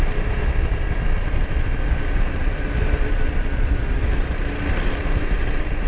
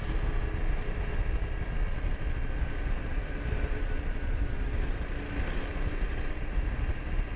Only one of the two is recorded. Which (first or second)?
second